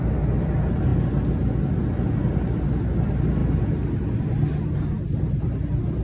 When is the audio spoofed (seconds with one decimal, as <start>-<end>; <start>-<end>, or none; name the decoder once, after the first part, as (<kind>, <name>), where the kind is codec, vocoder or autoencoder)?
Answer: none